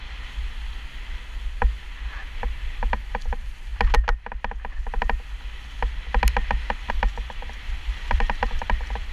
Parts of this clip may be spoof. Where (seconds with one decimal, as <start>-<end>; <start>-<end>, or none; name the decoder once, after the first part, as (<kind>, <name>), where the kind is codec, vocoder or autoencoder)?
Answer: 2.1-3.7 (vocoder, BigVGAN v2); 6.9-9.1